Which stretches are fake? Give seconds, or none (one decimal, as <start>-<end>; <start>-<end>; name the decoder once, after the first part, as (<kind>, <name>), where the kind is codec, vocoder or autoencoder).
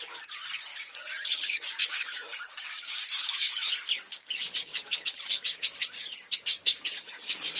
0.7-4.3 (codec, DAC); 4.7-7.6